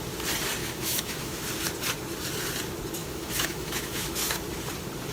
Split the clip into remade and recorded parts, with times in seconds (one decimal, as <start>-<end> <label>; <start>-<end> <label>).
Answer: 0.0-0.6 recorded; 0.6-1.4 remade; 1.4-3.0 recorded; 3.0-4.4 remade; 4.4-5.1 recorded